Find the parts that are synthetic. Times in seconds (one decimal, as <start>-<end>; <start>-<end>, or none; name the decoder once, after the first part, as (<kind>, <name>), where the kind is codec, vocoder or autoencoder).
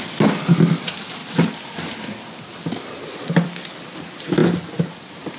none